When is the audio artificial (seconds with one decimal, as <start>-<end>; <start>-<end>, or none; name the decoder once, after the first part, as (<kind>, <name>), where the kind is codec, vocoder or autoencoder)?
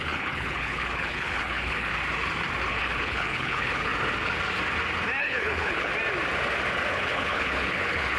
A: 0.0-1.9 (codec, HILCodec); 2.7-3.9; 5.2-5.9; 6.9-8.2